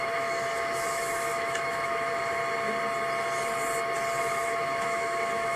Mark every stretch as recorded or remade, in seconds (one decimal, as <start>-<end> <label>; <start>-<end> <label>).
0.0-2.4 remade; 2.4-4.2 recorded; 4.2-5.6 remade